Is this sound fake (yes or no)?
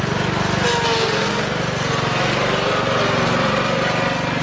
no